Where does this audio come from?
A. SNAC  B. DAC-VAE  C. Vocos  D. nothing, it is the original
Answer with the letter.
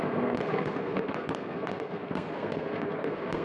A